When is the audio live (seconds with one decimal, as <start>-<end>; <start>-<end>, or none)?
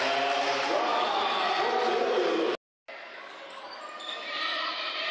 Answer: 0.0-0.9; 1.5-3.1; 3.8-5.1